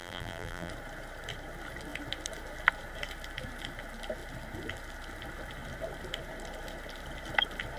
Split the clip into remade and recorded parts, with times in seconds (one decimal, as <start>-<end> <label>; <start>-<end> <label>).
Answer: 0.0-0.7 remade; 0.7-7.8 recorded